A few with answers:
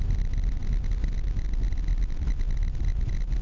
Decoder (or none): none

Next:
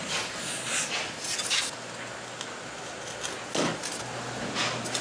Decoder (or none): none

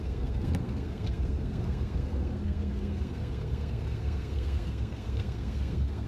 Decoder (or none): codec, SNAC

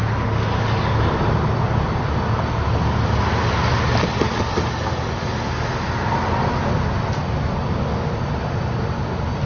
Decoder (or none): none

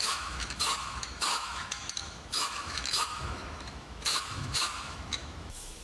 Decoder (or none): autoencoder, DAC-VAE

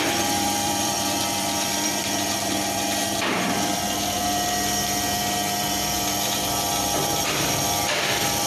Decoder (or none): vocoder, BigVGAN v2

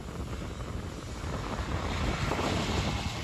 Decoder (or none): none